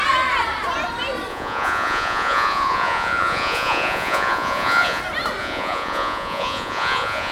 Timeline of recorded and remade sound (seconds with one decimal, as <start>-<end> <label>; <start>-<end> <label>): 0.0-1.3 recorded; 1.3-5.0 remade; 5.0-5.4 recorded; 5.4-7.3 remade